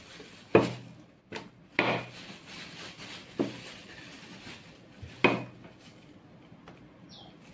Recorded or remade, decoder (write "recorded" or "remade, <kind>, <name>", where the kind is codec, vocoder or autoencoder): recorded